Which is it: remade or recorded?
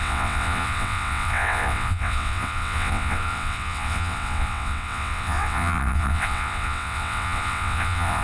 remade